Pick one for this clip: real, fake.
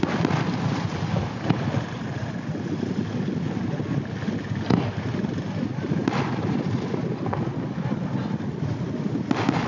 real